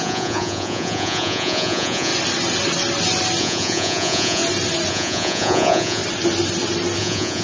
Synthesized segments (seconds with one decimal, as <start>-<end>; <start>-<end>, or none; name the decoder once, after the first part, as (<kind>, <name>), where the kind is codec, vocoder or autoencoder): 0.0-2.1 (vocoder, Vocos); 3.4-4.4; 4.9-6.0; 7.0-7.4